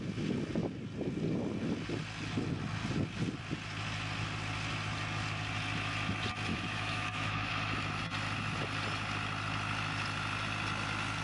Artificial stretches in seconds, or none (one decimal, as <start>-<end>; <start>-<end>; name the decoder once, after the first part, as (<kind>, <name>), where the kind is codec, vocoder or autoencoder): 6.5-7.5 (autoencoder, DAC-VAE)